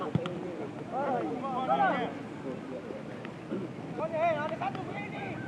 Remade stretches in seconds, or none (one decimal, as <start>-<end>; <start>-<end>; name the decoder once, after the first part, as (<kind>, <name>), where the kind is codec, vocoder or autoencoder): none